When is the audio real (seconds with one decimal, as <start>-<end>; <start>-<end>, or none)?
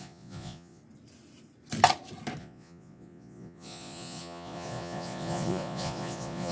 0.8-2.4